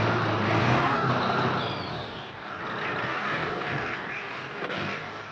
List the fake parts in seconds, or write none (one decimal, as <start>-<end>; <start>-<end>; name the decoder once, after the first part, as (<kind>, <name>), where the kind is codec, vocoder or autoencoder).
0.6-1.1 (codec, DAC); 1.9-2.6; 3.0-5.3